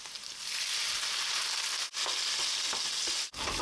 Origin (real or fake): real